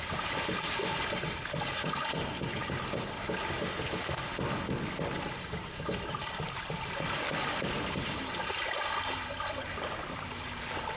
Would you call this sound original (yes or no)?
yes